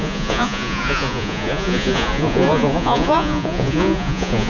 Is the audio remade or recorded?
remade